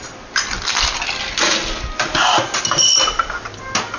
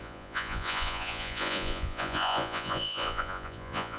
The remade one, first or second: second